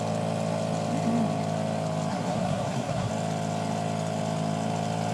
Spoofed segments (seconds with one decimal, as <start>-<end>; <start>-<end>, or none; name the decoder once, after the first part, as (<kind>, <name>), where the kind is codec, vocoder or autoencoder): 2.1-3.1 (codec, SNAC)